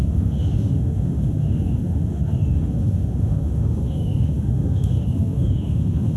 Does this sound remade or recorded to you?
remade